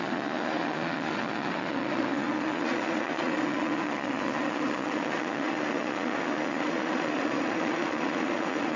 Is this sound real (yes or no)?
no